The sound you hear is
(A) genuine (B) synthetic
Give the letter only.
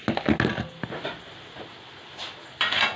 A